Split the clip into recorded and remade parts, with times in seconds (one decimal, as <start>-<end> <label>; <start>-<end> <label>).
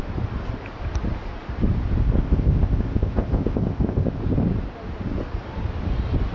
0.0-2.0 recorded; 2.0-4.2 remade; 4.2-6.3 recorded